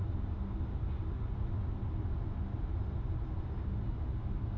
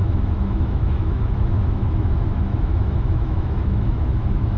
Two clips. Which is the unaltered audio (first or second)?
first